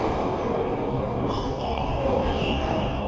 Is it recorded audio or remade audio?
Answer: remade